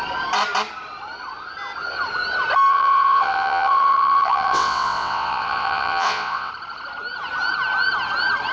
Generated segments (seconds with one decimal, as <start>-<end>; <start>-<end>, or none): 2.7-6.5